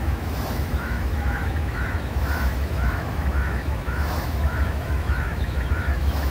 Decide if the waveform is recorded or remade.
remade